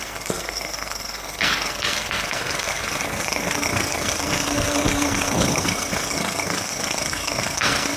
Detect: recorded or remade remade